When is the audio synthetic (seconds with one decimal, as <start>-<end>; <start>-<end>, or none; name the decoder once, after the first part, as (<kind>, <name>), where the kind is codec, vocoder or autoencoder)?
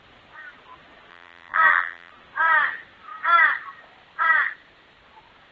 1.1-2.1 (vocoder, BigVGAN v2)